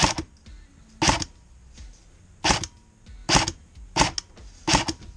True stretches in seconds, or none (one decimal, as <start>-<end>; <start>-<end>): 0.0-5.2